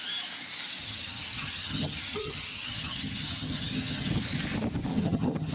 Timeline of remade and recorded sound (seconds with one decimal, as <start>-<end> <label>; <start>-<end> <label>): 0.0-0.8 recorded; 0.8-4.1 remade; 4.1-4.9 recorded; 4.9-5.5 remade